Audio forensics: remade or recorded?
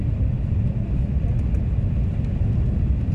recorded